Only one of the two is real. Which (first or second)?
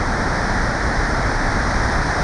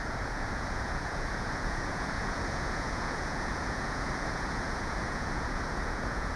first